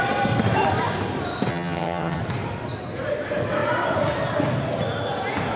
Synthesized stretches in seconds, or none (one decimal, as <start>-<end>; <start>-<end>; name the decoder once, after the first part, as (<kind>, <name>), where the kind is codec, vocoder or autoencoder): 1.5-2.2 (vocoder, HiFi-GAN)